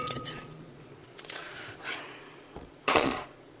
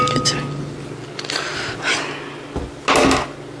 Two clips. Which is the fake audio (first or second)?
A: first